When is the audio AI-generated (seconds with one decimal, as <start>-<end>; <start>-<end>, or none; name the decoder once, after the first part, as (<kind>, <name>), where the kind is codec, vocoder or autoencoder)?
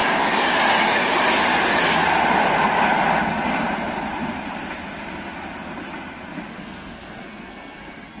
6.5-8.2 (codec, SNAC)